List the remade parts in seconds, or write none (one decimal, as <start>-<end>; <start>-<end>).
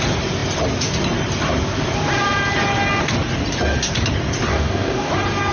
4.5-5.1